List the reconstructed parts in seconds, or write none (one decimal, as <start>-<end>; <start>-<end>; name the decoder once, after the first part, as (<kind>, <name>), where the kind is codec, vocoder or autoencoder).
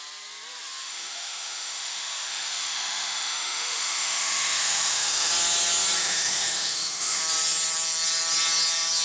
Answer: 0.8-5.3 (autoencoder, DAC-VAE); 6.0-7.2